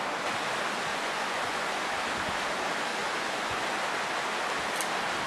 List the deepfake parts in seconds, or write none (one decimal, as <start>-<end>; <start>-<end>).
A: 0.9-1.8; 2.9-3.8